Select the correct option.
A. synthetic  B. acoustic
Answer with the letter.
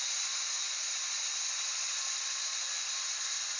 B